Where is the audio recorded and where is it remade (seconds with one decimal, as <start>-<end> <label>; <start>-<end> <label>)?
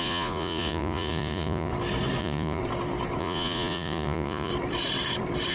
0.0-1.7 remade; 1.7-2.2 recorded; 2.2-2.6 remade; 2.6-3.2 recorded; 3.2-4.5 remade; 4.5-5.5 recorded